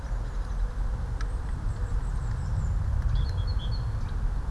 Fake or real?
real